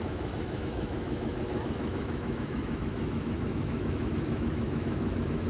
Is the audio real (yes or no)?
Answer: no